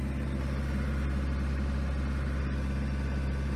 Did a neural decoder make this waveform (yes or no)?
no